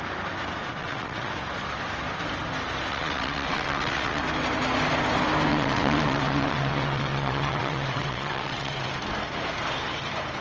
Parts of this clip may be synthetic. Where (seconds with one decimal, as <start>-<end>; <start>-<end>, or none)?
0.8-1.3; 2.9-4.2; 5.5-8.9

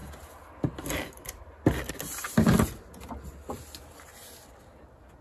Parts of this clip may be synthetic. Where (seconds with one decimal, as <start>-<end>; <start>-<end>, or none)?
none

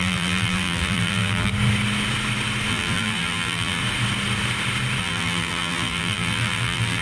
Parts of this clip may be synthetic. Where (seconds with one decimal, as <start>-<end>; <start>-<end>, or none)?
0.0-1.5; 2.7-3.8; 5.0-7.0

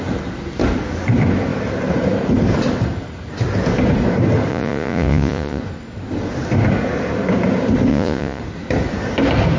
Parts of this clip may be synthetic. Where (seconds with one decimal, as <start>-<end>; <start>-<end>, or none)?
4.5-5.6; 7.9-8.4